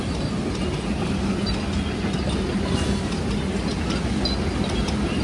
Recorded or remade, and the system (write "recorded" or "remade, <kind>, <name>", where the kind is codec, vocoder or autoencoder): recorded